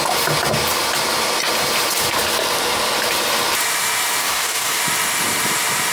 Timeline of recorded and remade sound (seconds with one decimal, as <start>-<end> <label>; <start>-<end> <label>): 0.0-4.2 recorded; 4.2-4.8 remade; 4.8-5.9 recorded